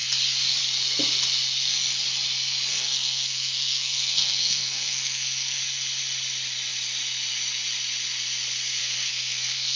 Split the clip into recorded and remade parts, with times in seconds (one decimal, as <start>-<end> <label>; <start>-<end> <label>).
0.0-2.7 recorded; 2.7-5.6 remade; 5.6-8.8 recorded; 8.8-9.8 remade